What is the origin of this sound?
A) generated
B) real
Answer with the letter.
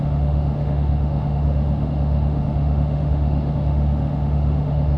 A